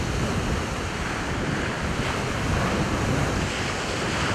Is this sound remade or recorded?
recorded